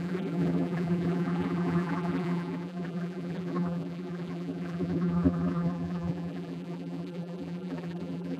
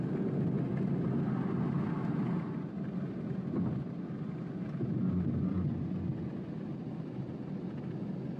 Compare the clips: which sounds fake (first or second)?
first